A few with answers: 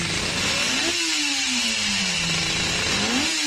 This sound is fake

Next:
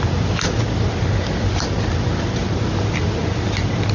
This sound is real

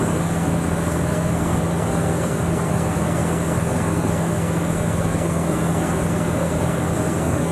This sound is fake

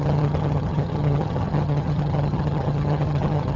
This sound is fake